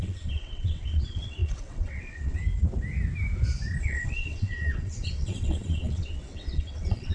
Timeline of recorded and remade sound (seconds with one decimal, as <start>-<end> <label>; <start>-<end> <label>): 0.0-2.4 remade; 2.4-3.8 recorded; 3.8-7.1 remade